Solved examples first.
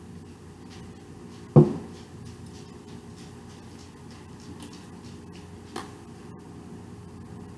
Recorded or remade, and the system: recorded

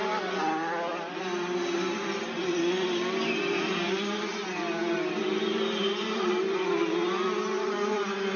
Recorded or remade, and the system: recorded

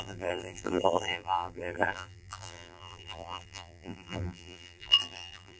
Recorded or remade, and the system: remade, vocoder, BigVGAN v2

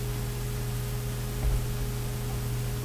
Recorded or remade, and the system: recorded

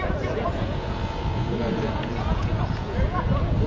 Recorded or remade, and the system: remade, vocoder, Vocos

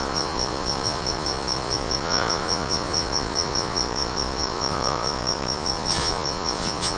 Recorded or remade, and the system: remade, vocoder, Vocos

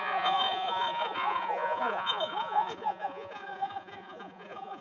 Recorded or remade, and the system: remade, vocoder, Vocos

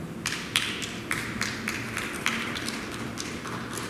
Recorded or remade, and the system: remade, vocoder, BigVGAN v2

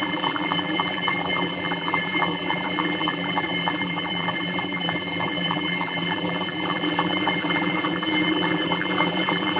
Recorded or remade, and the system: remade, vocoder, BigVGAN v2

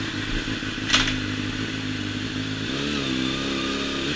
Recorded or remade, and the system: recorded